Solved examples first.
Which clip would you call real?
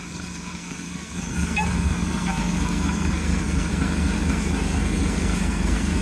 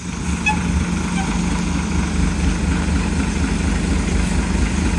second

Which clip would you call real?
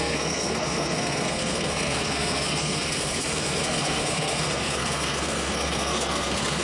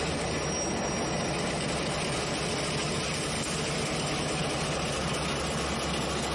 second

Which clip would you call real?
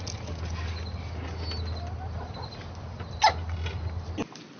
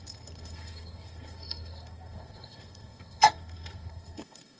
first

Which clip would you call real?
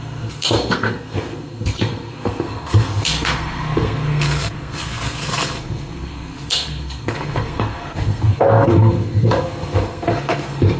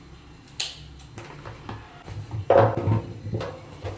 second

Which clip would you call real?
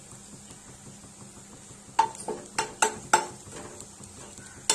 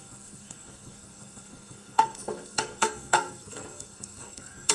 first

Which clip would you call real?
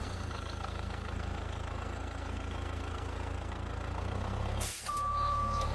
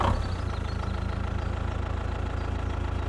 second